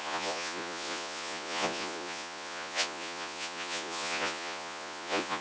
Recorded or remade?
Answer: remade